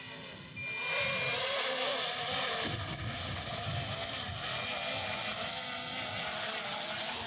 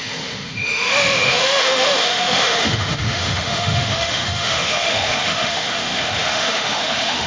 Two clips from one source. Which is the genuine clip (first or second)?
first